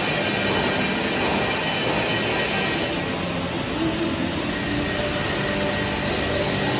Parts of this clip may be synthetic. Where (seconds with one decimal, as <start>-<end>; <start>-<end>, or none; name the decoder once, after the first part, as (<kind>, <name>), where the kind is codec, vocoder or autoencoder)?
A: none